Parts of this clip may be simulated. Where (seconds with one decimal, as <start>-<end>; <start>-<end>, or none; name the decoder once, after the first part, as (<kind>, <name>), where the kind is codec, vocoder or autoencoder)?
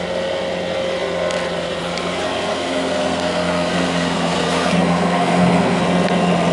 2.5-5.8 (codec, SNAC)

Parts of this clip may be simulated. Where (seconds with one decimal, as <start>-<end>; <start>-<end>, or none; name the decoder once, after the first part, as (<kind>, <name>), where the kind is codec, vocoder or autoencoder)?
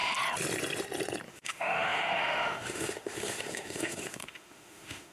1.3-5.1 (autoencoder, DAC-VAE)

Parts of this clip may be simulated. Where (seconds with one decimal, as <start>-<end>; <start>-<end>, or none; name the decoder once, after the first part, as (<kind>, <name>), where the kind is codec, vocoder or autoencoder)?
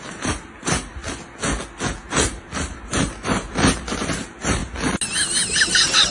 0.0-1.0 (vocoder, BigVGAN v2); 2.1-4.6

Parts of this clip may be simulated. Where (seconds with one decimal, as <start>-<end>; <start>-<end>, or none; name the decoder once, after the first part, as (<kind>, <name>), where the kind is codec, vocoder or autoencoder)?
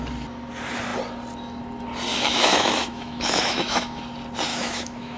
2.1-4.0 (autoencoder, DAC-VAE); 4.5-5.2